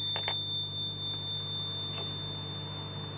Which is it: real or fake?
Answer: real